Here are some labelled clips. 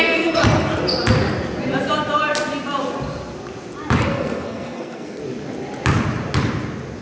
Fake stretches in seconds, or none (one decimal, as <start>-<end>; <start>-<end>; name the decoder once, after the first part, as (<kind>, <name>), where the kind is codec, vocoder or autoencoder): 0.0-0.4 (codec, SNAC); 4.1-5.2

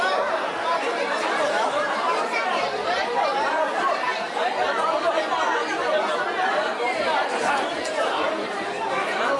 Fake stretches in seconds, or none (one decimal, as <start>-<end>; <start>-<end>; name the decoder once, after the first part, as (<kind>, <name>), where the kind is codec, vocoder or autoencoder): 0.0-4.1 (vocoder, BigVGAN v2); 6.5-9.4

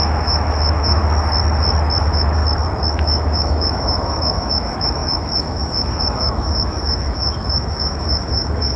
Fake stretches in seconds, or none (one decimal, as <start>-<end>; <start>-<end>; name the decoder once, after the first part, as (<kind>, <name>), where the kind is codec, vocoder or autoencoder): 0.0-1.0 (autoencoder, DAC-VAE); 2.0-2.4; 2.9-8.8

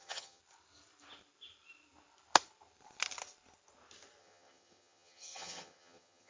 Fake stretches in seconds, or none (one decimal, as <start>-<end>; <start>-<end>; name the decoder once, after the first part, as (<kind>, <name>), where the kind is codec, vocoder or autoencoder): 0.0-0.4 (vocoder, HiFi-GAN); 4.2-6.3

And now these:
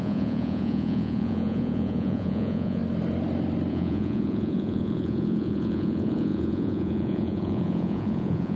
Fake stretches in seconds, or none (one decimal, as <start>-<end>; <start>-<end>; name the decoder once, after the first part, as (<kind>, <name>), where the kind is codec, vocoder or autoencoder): 0.0-2.8 (vocoder, Vocos); 3.7-8.6